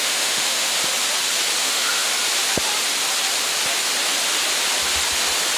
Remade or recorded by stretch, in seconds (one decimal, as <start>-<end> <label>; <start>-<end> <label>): 0.0-0.7 remade; 0.7-1.6 recorded; 1.6-2.1 remade; 2.1-5.6 recorded